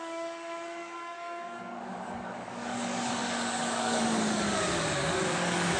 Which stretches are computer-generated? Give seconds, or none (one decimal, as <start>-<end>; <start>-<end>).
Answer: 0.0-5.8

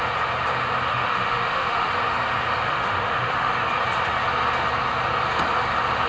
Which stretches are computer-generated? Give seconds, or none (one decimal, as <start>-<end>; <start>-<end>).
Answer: 0.9-1.9; 2.6-3.5

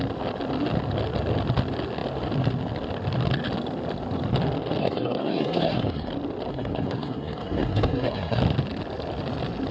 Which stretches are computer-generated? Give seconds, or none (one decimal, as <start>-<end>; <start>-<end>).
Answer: 4.8-6.1; 6.5-8.4

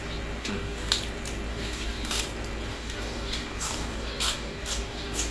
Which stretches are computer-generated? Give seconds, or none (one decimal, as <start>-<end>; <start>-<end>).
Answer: 0.4-0.9; 1.5-2.2; 2.7-5.3